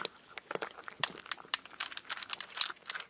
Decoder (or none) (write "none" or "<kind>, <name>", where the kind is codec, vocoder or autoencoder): none